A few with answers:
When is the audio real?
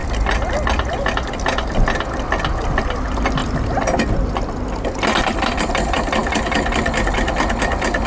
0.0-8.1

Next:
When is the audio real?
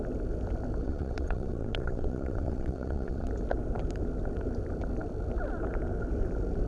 0.0-0.8; 3.3-6.7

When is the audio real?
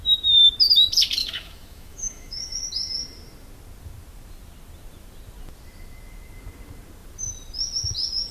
0.0-1.2; 2.6-8.3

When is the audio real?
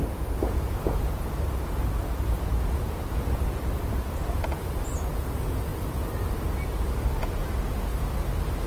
5.7-7.2; 7.9-8.7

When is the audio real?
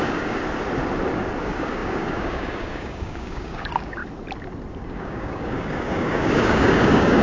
0.4-1.4; 4.0-4.7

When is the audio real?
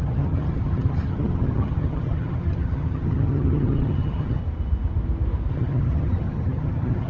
4.4-5.5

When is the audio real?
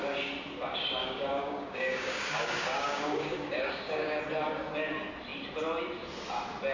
0.0-1.0; 4.2-6.7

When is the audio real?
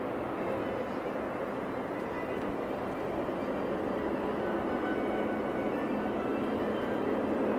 0.0-7.6